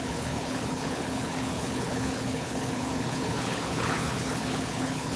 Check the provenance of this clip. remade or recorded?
remade